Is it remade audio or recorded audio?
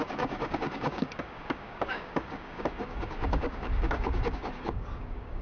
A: remade